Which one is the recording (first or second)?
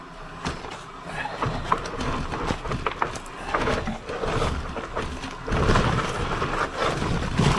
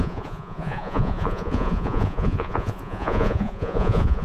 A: first